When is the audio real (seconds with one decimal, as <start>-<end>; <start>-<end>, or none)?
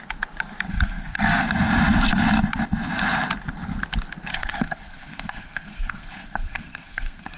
0.0-0.7; 1.4-4.3